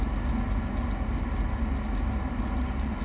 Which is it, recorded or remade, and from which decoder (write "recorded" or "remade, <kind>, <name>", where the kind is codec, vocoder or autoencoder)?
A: recorded